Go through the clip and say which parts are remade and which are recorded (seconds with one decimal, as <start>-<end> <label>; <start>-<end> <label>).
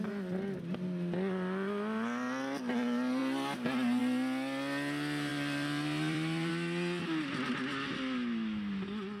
0.0-5.3 recorded; 5.3-6.5 remade; 6.5-9.2 recorded